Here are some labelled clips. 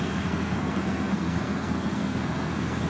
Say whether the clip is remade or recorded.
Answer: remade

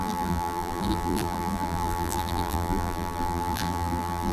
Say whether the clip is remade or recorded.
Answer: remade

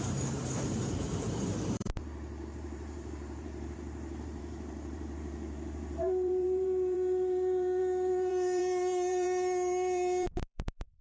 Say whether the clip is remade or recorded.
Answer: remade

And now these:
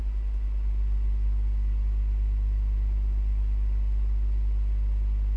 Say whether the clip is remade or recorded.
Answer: recorded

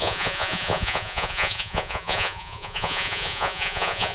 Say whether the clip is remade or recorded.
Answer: remade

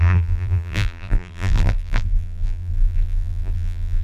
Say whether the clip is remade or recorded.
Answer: remade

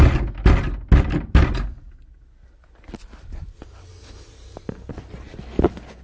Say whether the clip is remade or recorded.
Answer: recorded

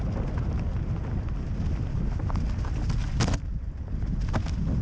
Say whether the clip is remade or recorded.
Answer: recorded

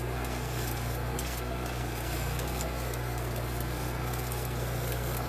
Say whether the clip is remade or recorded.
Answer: remade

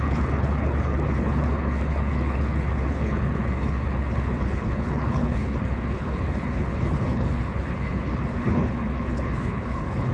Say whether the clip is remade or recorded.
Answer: remade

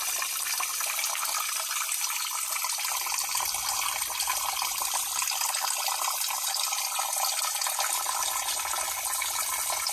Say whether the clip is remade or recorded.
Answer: recorded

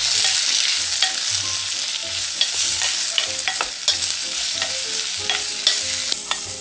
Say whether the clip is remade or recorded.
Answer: recorded